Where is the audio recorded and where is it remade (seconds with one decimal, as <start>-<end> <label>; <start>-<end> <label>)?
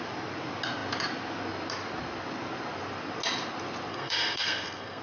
0.0-3.9 recorded; 3.9-5.0 remade